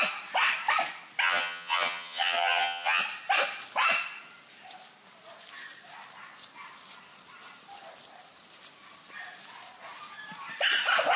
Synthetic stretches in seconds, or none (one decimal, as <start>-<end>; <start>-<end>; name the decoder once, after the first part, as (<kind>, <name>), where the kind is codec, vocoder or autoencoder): 1.2-3.0 (vocoder, HiFi-GAN)